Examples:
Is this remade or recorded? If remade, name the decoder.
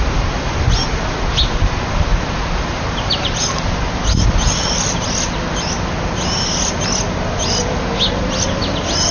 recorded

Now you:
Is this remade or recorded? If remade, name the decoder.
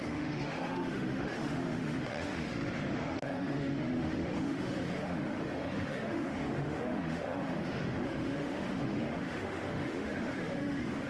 remade, autoencoder, DAC-VAE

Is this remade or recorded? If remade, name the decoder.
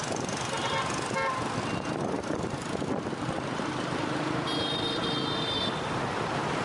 recorded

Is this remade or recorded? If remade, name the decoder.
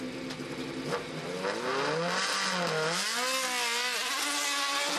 recorded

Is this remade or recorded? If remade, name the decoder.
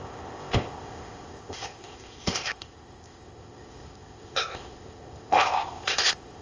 remade, codec, ZipCodec